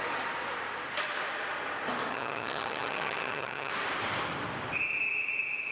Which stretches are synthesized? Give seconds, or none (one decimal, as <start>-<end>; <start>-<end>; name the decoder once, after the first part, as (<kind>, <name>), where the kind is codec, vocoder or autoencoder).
2.1-3.7 (vocoder, HiFi-GAN)